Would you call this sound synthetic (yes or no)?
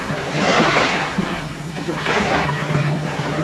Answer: yes